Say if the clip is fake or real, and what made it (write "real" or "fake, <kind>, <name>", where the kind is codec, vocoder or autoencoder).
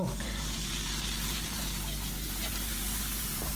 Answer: fake, vocoder, BigVGAN v2